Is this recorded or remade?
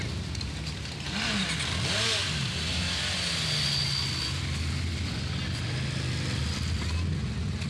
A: recorded